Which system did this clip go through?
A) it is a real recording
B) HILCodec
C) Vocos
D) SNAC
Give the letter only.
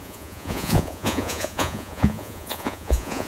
C